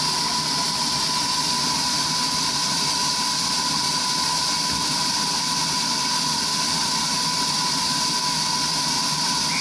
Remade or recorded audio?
recorded